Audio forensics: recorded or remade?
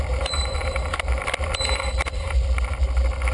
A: recorded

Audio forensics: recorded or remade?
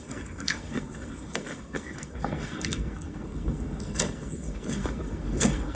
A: remade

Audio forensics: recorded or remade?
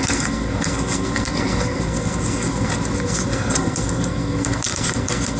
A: remade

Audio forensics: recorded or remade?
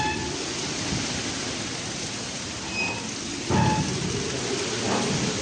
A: recorded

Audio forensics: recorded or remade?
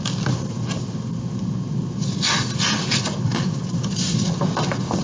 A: recorded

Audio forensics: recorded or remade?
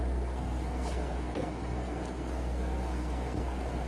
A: remade